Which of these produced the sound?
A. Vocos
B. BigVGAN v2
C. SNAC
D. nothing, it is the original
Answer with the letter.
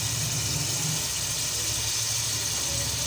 D